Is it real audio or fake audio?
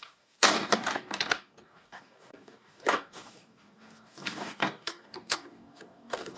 fake